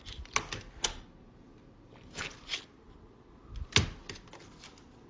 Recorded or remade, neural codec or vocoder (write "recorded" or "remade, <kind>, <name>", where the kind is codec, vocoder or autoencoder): recorded